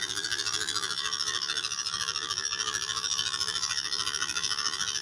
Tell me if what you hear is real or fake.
fake